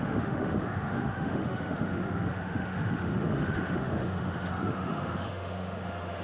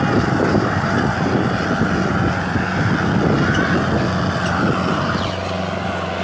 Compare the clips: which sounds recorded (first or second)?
second